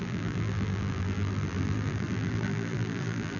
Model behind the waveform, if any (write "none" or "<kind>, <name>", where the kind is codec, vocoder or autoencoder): vocoder, BigVGAN v2